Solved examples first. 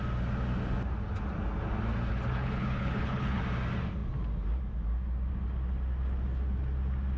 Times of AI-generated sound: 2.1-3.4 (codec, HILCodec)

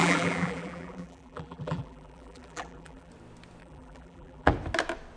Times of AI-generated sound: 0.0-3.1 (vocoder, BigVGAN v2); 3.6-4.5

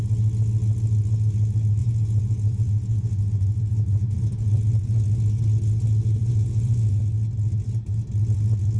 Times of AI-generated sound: 1.8-4.7 (vocoder, Vocos); 6.2-7.0

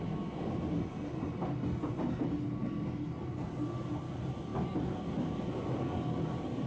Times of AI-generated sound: none